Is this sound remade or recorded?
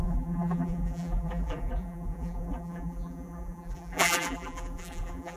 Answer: remade